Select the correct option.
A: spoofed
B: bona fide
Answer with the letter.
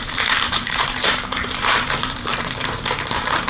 A